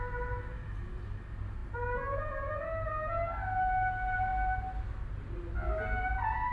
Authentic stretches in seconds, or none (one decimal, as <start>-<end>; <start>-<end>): 0.0-6.5